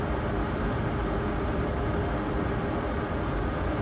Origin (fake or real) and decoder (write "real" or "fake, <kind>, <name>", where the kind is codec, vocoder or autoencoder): real